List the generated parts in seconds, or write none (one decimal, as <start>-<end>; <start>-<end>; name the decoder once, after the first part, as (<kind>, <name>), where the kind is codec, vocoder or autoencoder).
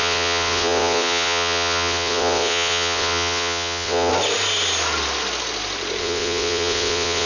0.0-4.1 (vocoder, WaveNeXt); 6.0-7.3